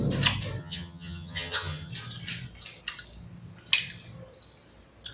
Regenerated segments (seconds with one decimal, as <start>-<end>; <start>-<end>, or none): 0.6-1.9